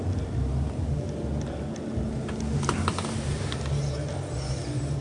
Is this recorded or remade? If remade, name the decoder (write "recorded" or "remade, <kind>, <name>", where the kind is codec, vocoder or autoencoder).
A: recorded